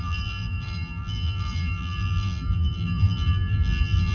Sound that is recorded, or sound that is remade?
remade